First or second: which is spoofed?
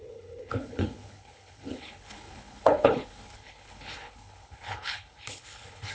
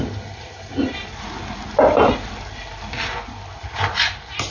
first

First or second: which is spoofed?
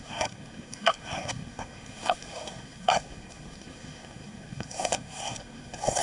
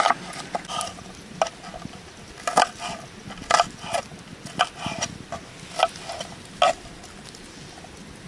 first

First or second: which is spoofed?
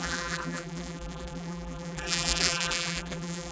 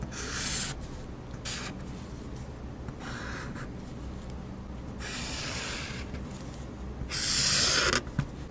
first